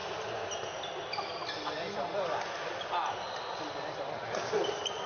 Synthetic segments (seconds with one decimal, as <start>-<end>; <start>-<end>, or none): none